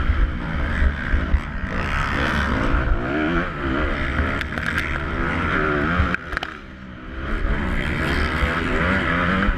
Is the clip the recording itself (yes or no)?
yes